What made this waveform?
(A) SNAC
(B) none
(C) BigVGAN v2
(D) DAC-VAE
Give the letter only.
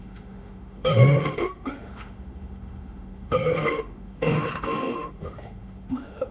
D